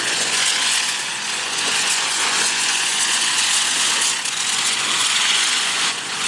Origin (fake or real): fake